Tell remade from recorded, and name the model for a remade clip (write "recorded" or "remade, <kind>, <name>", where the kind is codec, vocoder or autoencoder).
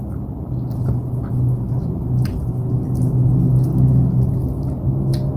recorded